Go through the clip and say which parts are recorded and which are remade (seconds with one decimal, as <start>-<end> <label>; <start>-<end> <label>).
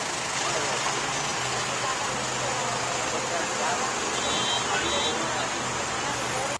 0.0-6.6 recorded